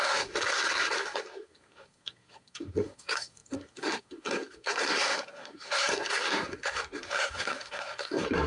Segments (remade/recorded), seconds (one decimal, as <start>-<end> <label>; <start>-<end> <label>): 0.0-8.5 remade